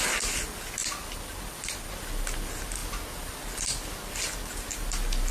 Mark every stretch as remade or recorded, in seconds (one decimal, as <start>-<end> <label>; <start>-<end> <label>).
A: 0.0-5.3 recorded